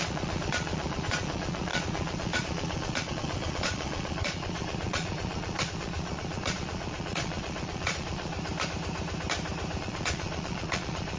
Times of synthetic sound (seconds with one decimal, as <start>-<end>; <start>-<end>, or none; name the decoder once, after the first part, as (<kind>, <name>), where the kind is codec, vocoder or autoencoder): 0.0-8.3 (vocoder, Vocos); 9.8-11.2